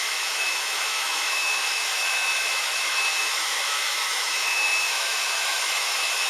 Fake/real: fake